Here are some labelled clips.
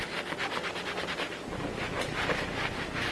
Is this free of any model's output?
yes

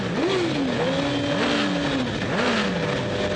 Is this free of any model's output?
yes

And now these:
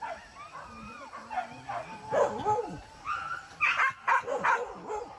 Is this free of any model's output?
yes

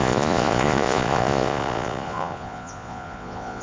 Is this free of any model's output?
no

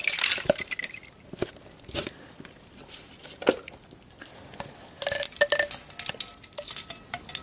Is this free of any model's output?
yes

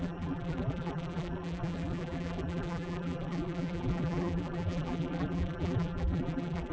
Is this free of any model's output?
no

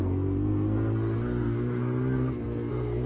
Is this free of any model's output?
no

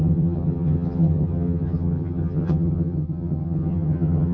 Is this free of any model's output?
no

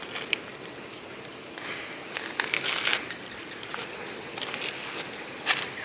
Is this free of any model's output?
yes